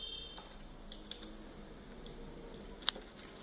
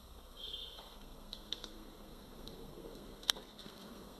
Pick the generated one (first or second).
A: second